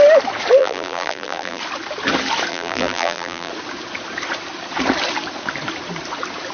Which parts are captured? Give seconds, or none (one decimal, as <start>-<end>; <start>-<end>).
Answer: 0.0-0.6; 1.6-2.5; 3.5-6.5